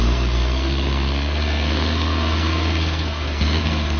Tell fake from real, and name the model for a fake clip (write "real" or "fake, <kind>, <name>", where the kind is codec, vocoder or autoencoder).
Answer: fake, codec, SNAC